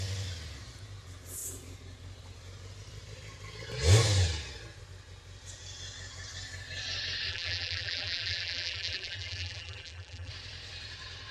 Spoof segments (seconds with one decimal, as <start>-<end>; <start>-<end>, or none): 7.3-10.3